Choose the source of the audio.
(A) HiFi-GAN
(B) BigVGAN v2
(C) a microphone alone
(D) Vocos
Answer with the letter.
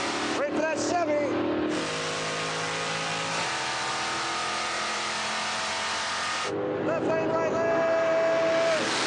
C